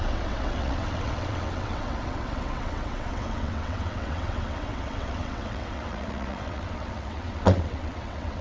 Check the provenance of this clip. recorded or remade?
remade